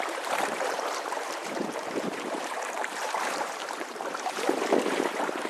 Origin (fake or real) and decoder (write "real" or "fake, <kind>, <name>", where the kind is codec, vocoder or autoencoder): fake, vocoder, BigVGAN v2